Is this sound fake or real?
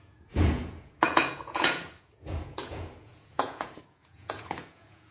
fake